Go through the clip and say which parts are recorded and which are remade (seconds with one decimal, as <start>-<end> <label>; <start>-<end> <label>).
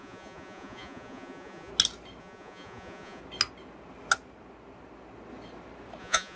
0.0-1.7 remade; 1.7-2.2 recorded; 2.2-3.2 remade; 3.2-6.0 recorded; 6.0-6.4 remade